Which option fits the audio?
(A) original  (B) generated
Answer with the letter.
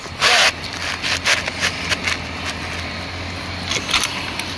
A